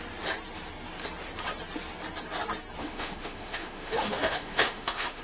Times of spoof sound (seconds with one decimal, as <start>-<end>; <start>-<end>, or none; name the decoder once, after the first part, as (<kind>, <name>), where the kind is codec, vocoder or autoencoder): 2.8-5.2 (autoencoder, DAC-VAE)